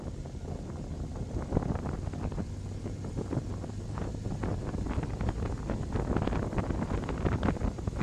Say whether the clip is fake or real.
real